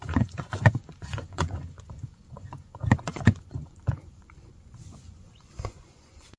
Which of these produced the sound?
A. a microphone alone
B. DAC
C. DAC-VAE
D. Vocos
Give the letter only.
D